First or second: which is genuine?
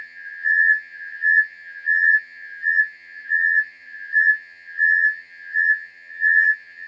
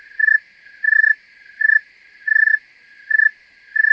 second